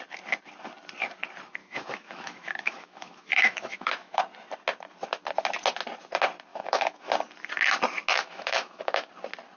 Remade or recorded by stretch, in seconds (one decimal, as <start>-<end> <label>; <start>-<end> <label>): 0.0-1.6 recorded; 1.6-4.2 remade; 4.2-6.5 recorded; 6.5-7.1 remade; 7.1-8.1 recorded; 8.1-9.1 remade; 9.1-9.6 recorded